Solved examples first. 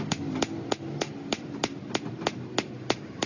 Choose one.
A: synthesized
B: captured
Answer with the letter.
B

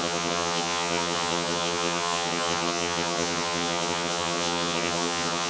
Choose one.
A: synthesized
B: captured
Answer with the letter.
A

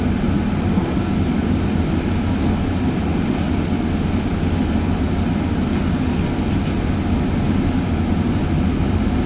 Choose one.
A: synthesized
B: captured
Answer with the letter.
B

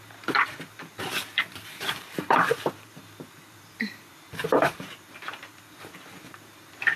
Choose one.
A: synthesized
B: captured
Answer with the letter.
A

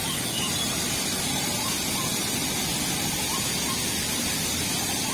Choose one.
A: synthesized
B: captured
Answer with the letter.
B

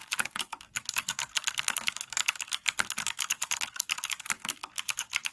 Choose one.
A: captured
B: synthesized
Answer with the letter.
B